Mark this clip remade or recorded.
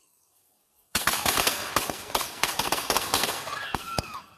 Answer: remade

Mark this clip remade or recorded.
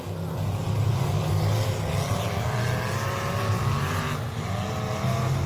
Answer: recorded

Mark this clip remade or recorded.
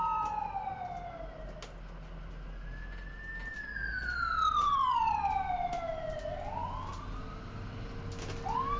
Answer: recorded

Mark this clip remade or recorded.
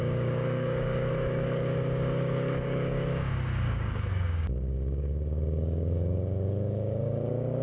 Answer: remade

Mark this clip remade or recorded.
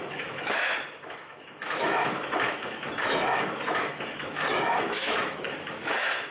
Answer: remade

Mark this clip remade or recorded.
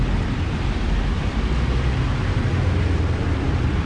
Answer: remade